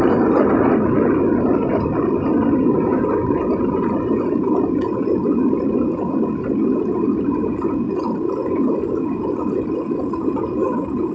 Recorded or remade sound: recorded